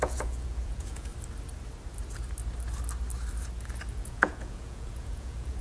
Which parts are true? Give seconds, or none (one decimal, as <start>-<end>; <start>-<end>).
1.1-3.9